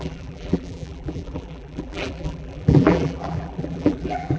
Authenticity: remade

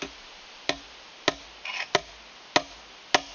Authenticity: recorded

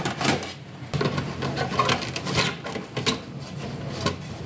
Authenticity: recorded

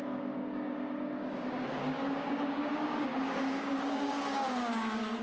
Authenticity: remade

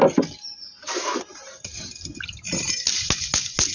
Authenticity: recorded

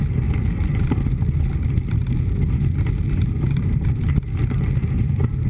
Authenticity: recorded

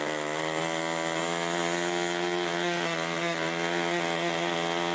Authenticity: recorded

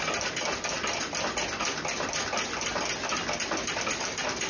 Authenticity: recorded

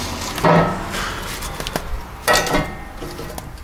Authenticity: recorded